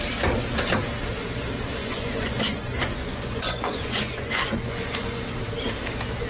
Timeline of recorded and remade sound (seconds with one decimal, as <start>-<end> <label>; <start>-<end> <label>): 0.0-1.8 recorded; 1.8-5.2 remade; 5.2-6.3 recorded